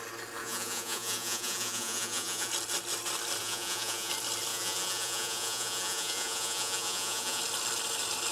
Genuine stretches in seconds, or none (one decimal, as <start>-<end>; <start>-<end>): 0.0-0.4; 2.5-3.4; 4.1-4.5; 7.4-8.3